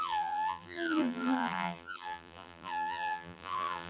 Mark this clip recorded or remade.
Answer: remade